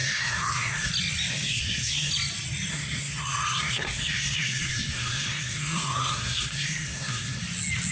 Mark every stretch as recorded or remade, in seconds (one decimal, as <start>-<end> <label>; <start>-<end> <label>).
0.0-0.9 remade; 0.9-1.3 recorded; 1.3-2.1 remade; 2.1-2.7 recorded; 2.7-7.4 remade; 7.4-7.9 recorded